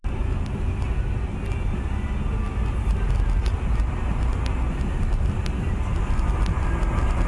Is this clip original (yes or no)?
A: yes